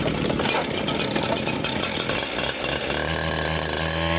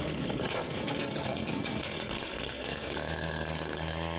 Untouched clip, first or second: first